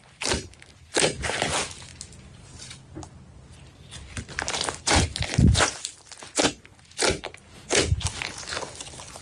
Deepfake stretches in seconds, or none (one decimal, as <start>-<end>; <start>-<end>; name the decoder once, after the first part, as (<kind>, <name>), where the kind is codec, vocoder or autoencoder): none